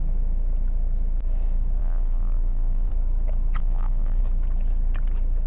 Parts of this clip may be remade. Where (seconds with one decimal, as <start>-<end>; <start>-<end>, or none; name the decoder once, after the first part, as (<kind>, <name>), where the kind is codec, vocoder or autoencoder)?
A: 1.8-2.9 (vocoder, BigVGAN v2); 3.6-4.2